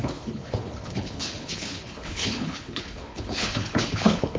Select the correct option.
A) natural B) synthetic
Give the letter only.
B